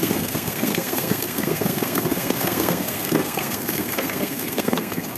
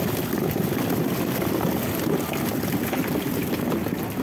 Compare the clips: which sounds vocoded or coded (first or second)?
first